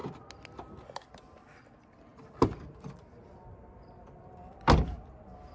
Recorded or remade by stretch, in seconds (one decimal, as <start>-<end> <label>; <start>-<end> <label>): 0.0-5.5 recorded